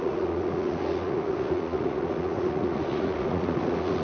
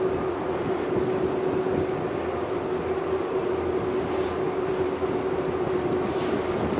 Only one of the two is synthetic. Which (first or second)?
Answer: first